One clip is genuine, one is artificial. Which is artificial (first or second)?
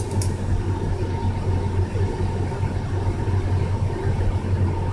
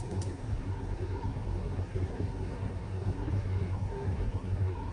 second